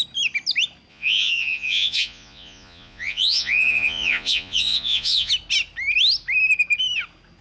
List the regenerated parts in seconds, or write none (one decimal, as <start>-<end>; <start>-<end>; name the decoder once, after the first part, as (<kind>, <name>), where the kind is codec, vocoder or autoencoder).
0.9-5.3 (vocoder, Vocos)